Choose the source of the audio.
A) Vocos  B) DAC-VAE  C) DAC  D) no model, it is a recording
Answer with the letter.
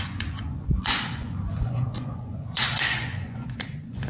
A